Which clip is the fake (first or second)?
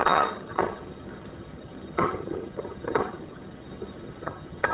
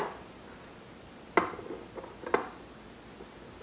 first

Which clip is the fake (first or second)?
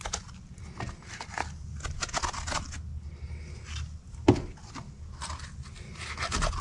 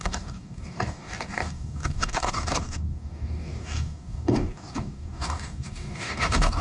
second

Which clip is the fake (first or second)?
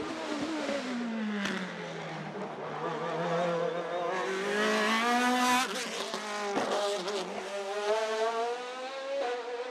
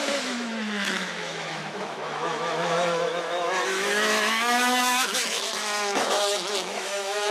second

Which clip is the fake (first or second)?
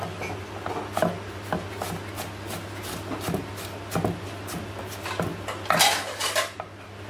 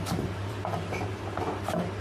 second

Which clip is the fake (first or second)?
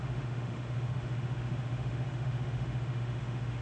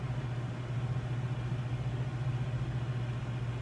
first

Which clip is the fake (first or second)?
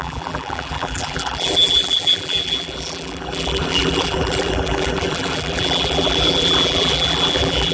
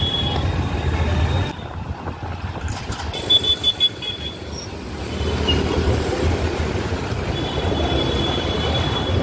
first